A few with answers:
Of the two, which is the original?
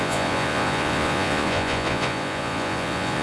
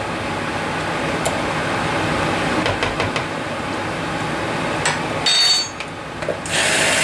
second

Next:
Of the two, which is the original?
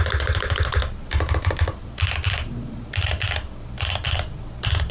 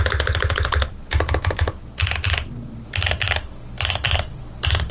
second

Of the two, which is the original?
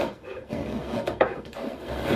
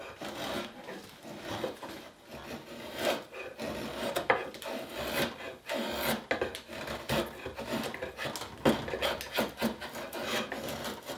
second